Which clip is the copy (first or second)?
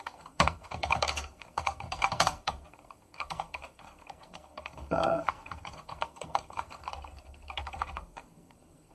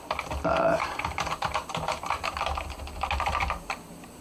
first